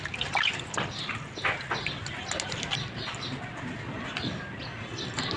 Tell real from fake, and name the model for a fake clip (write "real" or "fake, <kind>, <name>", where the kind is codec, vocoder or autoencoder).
real